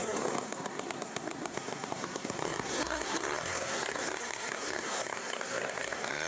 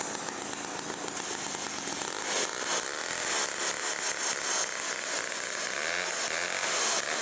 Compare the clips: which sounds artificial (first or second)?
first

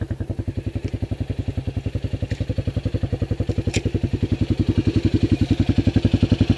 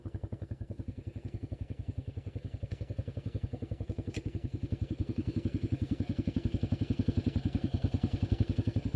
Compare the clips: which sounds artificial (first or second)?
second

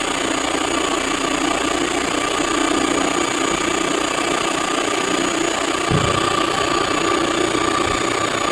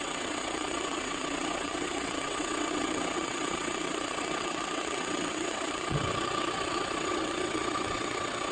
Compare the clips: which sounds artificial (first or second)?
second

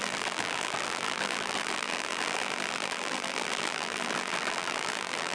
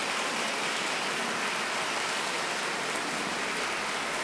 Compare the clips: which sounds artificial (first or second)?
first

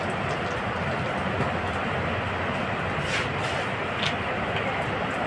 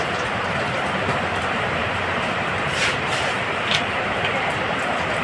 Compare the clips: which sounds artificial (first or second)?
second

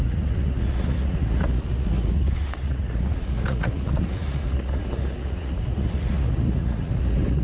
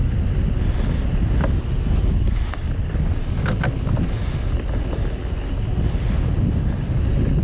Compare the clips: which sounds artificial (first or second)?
first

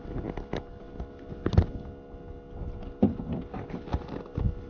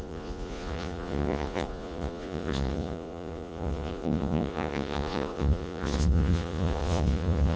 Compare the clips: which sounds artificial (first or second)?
second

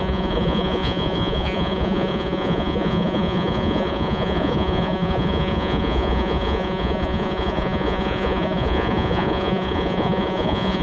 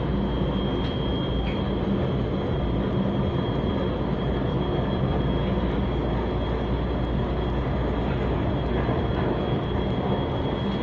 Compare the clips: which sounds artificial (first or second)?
first